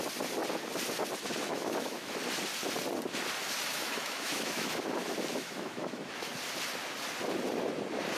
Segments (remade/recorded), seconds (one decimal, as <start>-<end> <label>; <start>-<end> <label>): 0.0-1.5 recorded; 1.5-2.2 remade; 2.2-3.7 recorded; 3.7-4.8 remade; 4.8-5.3 recorded; 5.3-6.3 remade; 6.3-8.2 recorded